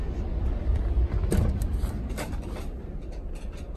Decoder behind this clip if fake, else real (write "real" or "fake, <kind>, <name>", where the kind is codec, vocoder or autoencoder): real